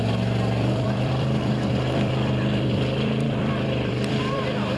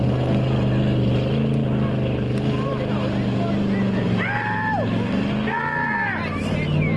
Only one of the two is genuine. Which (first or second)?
second